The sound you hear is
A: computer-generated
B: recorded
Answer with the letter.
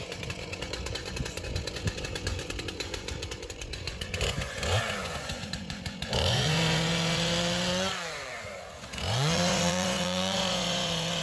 A